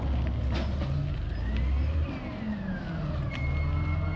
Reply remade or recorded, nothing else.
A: recorded